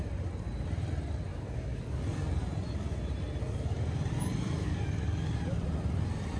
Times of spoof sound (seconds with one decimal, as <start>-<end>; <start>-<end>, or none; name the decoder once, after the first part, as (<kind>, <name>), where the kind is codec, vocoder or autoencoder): 1.3-2.0 (codec, DAC); 4.6-5.4